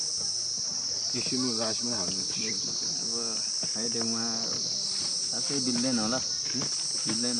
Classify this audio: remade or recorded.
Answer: recorded